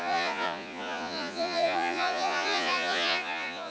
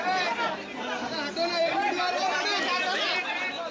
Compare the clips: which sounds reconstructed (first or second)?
first